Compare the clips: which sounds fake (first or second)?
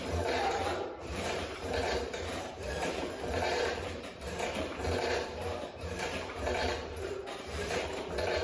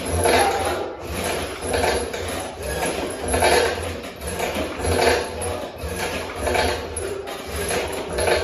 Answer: first